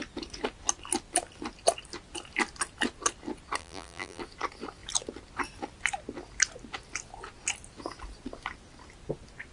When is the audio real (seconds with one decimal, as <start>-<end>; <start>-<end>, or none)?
0.0-3.6; 4.2-9.5